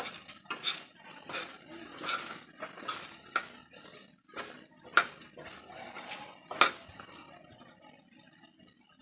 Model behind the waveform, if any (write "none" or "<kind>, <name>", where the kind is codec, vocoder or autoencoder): none